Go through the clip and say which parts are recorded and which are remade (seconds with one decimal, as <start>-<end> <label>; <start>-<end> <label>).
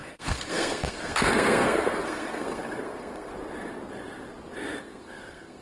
0.0-3.3 remade; 3.3-4.8 recorded; 4.8-5.6 remade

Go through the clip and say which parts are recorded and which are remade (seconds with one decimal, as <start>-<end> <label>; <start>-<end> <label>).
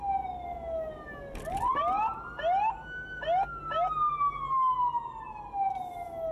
0.0-6.3 recorded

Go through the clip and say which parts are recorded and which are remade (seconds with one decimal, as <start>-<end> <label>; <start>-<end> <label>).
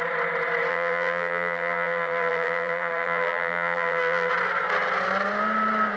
0.0-0.7 recorded; 0.7-4.3 remade; 4.3-6.0 recorded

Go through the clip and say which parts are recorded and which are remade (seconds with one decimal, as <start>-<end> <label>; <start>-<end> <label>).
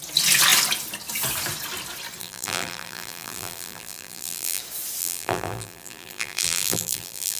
0.0-2.2 recorded; 2.2-4.6 remade; 4.6-5.0 recorded; 5.0-7.4 remade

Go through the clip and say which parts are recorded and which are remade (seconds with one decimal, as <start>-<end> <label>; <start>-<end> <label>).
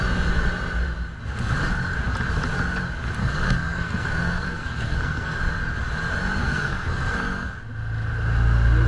0.0-3.2 recorded; 3.2-5.4 remade; 5.4-6.4 recorded; 6.4-7.5 remade; 7.5-8.9 recorded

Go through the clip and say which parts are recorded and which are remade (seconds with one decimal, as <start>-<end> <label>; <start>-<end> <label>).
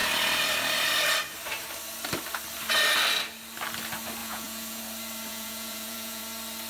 0.0-4.2 recorded; 4.2-4.8 remade; 4.8-5.3 recorded; 5.3-6.2 remade; 6.2-6.7 recorded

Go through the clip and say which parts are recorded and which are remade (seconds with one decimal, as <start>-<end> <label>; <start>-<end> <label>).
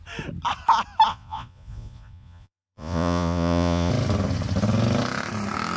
0.0-1.1 recorded; 1.1-3.9 remade; 3.9-5.8 recorded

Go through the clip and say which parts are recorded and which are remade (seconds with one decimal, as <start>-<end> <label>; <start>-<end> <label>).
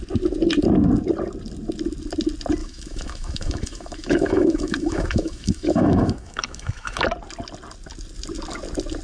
0.0-2.6 recorded; 2.6-7.0 remade; 7.0-9.0 recorded